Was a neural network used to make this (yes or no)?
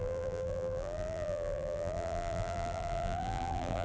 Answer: yes